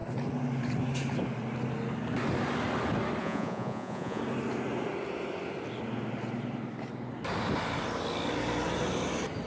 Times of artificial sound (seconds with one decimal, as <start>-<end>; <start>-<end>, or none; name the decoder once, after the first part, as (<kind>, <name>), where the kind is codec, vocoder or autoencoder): 3.2-4.2 (vocoder, Vocos)